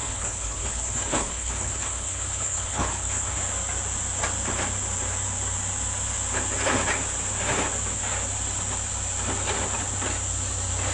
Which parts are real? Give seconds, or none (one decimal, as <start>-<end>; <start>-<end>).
3.4-10.9